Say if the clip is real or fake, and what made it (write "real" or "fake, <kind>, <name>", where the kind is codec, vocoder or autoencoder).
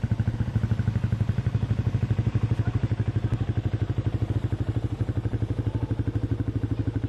real